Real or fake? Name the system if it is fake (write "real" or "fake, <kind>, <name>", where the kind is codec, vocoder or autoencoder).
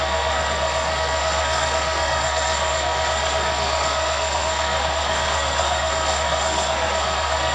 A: fake, codec, SNAC